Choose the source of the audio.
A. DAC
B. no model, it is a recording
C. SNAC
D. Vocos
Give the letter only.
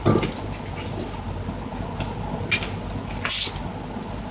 B